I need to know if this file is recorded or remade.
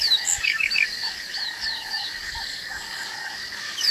remade